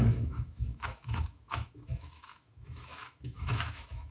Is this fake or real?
fake